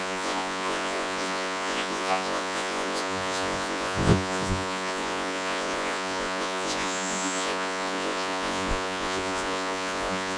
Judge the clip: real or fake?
fake